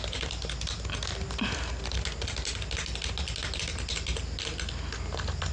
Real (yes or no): yes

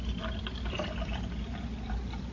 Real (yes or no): yes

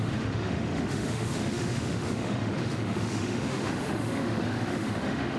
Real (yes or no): no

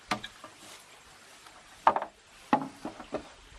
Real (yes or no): yes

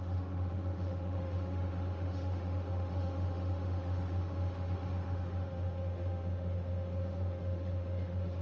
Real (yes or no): no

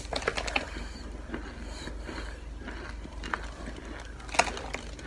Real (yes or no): yes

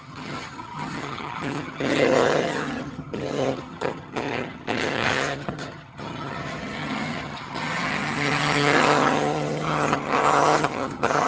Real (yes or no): no